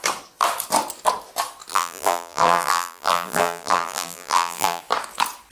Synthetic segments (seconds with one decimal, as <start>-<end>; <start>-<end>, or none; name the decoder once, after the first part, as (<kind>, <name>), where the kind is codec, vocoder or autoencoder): 1.7-4.8 (vocoder, BigVGAN v2)